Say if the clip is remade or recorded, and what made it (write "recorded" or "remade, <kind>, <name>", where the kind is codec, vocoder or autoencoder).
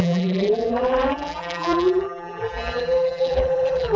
remade, vocoder, BigVGAN v2